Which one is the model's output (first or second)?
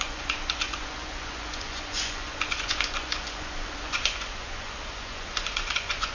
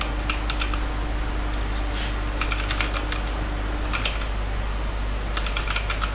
first